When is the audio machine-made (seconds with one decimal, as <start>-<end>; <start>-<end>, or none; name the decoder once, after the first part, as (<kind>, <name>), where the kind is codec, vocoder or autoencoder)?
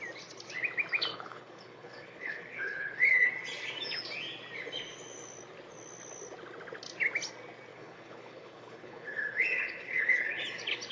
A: 1.1-3.3 (codec, HILCodec); 7.7-10.4